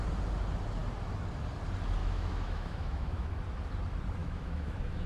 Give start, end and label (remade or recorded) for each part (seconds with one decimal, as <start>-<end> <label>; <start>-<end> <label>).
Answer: 0.0-2.0 recorded; 2.0-3.3 remade; 3.3-4.2 recorded; 4.2-5.1 remade